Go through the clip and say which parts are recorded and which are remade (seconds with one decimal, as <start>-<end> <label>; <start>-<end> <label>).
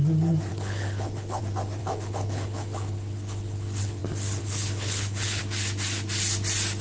0.0-0.5 recorded; 0.5-1.4 remade; 1.4-1.8 recorded; 1.8-4.0 remade; 4.0-4.4 recorded; 4.4-5.4 remade; 5.4-6.8 recorded